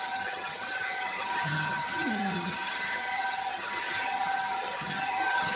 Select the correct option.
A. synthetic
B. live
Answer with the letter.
A